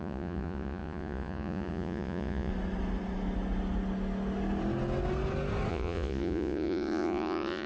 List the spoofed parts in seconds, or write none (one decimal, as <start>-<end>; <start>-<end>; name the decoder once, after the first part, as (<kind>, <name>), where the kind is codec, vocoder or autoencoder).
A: 0.0-2.5 (vocoder, Vocos); 5.7-7.7

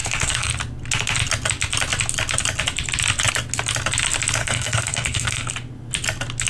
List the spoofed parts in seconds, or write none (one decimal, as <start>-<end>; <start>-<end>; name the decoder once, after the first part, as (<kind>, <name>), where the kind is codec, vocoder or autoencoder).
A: 0.0-0.5 (codec, SNAC); 4.4-5.5

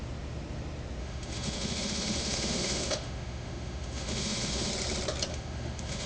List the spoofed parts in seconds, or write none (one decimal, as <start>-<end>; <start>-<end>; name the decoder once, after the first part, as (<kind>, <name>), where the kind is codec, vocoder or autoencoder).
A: 1.0-4.7 (autoencoder, DAC-VAE); 5.3-6.1